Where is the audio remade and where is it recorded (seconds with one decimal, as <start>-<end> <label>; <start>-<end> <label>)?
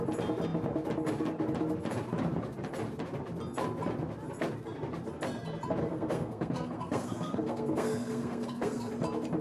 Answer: 0.0-5.8 recorded; 5.8-8.9 remade; 8.9-9.4 recorded